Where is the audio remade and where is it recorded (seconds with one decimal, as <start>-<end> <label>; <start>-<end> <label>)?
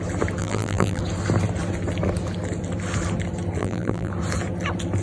0.0-0.4 recorded; 0.4-1.0 remade; 1.0-3.6 recorded; 3.6-4.1 remade; 4.1-5.0 recorded